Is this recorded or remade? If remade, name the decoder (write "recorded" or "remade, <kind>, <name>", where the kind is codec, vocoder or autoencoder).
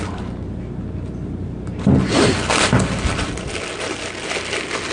recorded